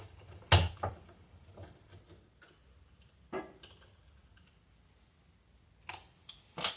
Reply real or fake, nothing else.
real